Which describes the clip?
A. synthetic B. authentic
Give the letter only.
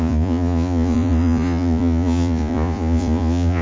A